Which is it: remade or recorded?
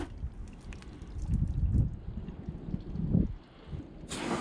recorded